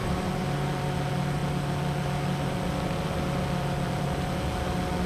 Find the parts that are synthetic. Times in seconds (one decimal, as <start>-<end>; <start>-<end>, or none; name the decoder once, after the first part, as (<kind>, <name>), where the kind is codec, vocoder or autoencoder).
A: 0.0-0.7 (vocoder, BigVGAN v2)